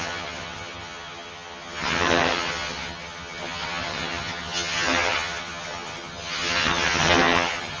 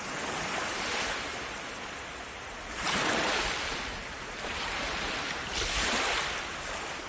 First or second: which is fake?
first